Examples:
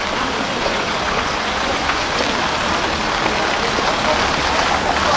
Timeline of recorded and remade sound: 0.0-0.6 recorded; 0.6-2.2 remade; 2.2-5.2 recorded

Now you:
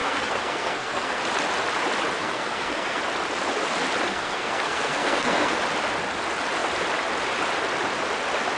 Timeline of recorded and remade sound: 0.0-1.2 remade; 1.2-2.2 recorded; 2.2-3.0 remade; 3.0-4.1 recorded; 4.1-5.6 remade; 5.6-8.6 recorded

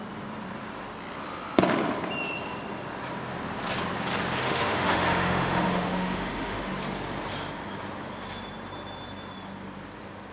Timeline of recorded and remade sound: 0.0-4.4 recorded; 4.4-6.7 remade; 6.7-10.3 recorded

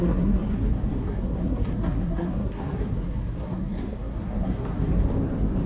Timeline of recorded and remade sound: 0.0-4.9 remade; 4.9-5.7 recorded

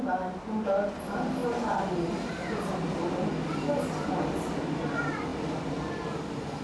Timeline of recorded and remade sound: 0.0-6.6 recorded